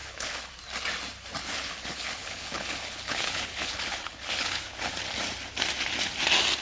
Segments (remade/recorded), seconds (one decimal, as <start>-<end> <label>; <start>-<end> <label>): 0.0-0.5 remade; 0.5-1.4 recorded; 1.4-4.9 remade; 4.9-6.6 recorded